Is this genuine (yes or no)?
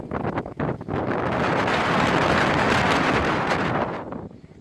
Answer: yes